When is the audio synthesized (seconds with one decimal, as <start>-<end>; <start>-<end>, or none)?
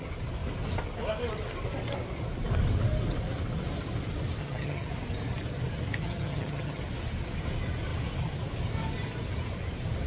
4.4-4.9; 6.0-6.8